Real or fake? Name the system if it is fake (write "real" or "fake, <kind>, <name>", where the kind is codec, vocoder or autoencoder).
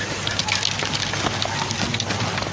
real